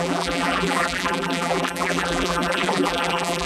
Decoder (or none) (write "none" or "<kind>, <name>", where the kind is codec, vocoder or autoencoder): vocoder, BigVGAN v2